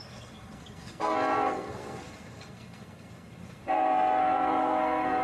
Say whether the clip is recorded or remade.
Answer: remade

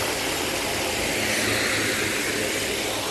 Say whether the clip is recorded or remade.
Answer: recorded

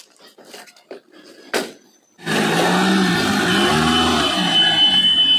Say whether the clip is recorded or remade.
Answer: recorded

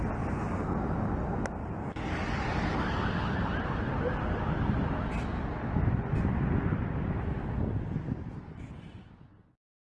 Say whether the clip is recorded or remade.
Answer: recorded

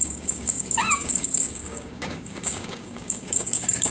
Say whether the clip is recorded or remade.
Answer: remade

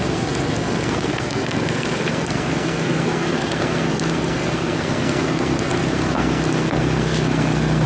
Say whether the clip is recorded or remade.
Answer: remade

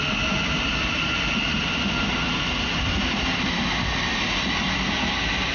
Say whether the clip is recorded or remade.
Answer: recorded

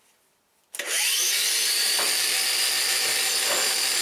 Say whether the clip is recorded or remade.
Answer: recorded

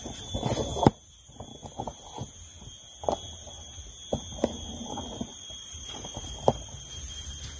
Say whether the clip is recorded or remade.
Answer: recorded